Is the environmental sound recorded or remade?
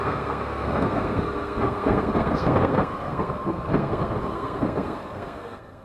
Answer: remade